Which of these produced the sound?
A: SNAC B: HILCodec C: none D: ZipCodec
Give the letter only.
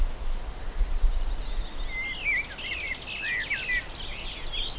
C